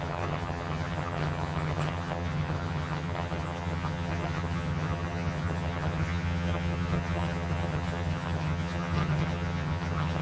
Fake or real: fake